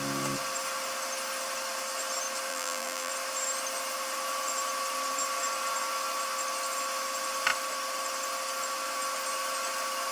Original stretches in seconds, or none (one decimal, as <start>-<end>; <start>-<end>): 0.0-2.5; 3.1-10.1